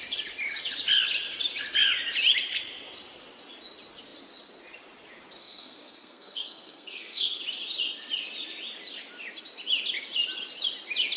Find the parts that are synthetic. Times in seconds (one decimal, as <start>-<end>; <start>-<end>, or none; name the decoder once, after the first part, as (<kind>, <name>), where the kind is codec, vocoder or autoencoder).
5.4-7.4 (codec, SNAC)

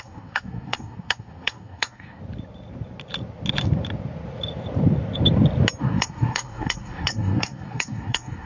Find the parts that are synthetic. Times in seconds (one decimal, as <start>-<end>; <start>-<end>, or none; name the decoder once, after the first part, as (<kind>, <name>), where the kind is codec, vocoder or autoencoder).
0.0-2.2 (codec, SNAC); 5.8-8.5